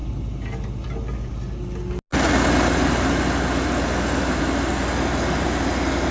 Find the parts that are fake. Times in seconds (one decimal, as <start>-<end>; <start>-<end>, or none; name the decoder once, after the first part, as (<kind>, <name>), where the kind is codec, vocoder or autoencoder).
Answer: none